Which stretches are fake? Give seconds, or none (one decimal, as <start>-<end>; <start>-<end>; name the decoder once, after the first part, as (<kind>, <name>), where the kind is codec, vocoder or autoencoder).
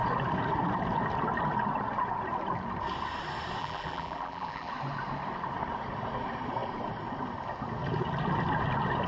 3.6-4.7 (vocoder, BigVGAN v2)